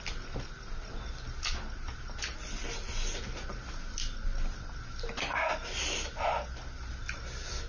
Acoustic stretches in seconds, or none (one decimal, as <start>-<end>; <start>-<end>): 0.0-7.7